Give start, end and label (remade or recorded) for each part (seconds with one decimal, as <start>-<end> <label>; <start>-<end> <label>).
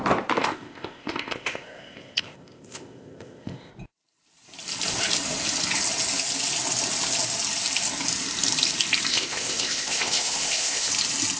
0.0-0.4 recorded; 0.4-3.7 remade; 3.7-9.1 recorded; 9.1-10.9 remade; 10.9-11.4 recorded